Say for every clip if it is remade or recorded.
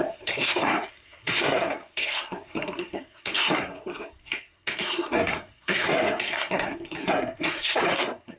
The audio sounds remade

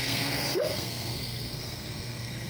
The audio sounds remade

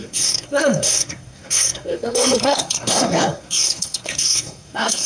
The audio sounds remade